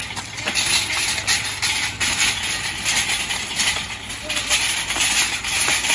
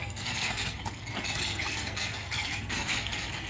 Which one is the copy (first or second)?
second